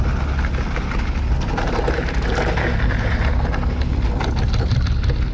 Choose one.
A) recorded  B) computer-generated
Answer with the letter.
A